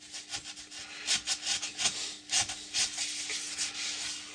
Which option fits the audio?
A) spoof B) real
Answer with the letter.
B